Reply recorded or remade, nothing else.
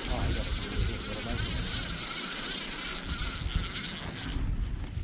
recorded